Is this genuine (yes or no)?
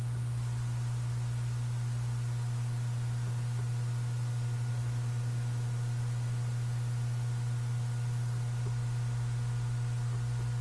yes